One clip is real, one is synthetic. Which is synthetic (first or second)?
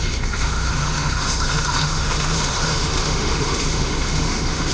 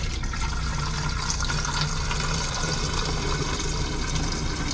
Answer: first